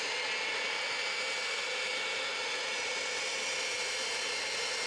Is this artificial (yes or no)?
no